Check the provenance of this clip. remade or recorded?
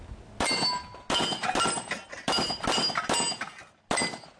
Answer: recorded